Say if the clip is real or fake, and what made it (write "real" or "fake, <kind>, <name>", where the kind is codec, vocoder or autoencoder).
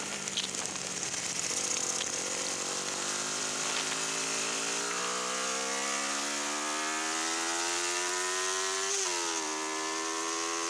real